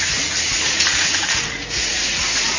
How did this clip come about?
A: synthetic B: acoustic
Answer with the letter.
A